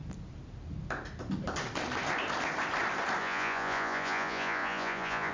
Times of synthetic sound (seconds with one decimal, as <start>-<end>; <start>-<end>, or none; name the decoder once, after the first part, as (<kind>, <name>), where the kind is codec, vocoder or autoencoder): 3.2-5.3 (vocoder, Vocos)